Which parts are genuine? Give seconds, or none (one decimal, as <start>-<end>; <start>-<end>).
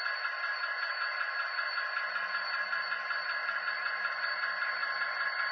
0.0-0.5; 3.8-4.8